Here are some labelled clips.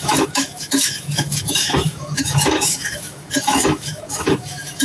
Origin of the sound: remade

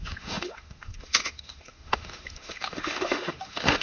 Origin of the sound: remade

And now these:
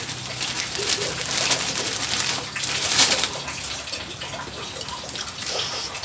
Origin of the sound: recorded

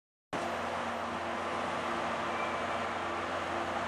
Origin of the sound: recorded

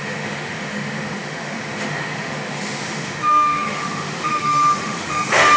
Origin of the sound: remade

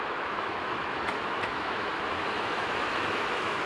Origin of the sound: remade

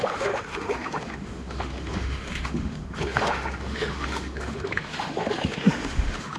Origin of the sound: remade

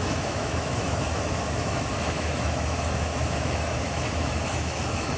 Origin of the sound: remade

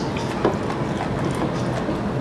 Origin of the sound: recorded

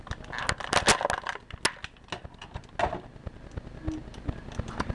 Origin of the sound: recorded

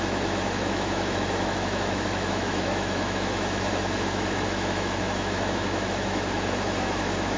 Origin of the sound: remade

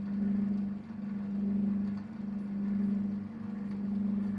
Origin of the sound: recorded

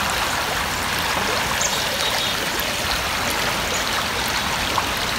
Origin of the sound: recorded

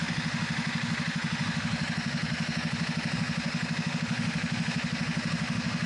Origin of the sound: remade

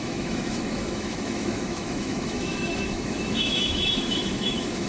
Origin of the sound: remade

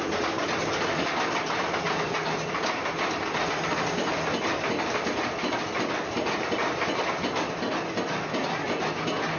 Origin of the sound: recorded